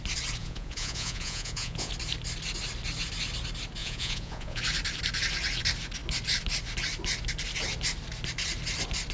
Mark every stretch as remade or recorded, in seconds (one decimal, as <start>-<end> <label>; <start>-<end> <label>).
0.0-0.4 recorded; 0.4-1.9 remade; 1.9-3.8 recorded; 3.8-4.6 remade; 4.6-9.1 recorded

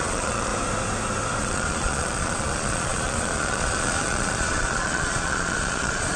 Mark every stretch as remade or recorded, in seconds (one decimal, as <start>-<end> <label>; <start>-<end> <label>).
0.0-0.5 remade; 0.5-1.4 recorded; 1.4-6.2 remade